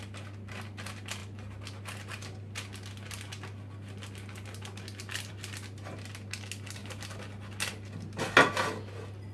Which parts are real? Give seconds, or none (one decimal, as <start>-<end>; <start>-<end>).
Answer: 0.0-9.3